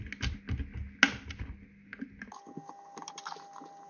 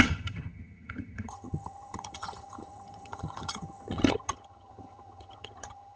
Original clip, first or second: first